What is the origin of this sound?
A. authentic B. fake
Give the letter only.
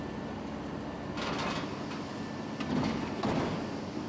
A